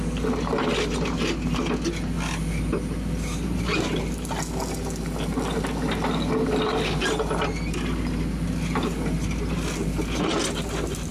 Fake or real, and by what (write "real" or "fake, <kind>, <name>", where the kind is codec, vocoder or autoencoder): real